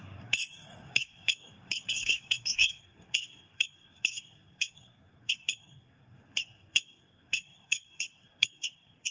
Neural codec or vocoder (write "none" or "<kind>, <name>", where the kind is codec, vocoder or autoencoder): codec, SNAC